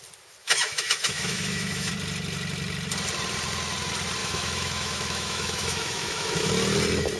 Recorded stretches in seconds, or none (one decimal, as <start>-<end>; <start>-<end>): 0.0-0.4; 1.9-4.2; 6.5-7.2